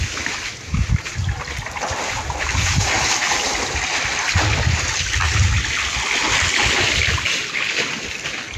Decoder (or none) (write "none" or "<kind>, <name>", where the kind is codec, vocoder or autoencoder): none